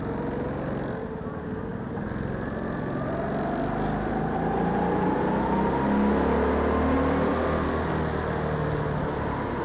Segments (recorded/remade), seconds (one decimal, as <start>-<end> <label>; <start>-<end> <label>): 0.0-9.6 recorded